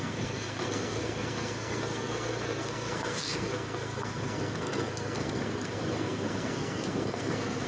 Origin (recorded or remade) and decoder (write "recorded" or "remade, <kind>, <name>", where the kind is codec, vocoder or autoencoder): remade, codec, SNAC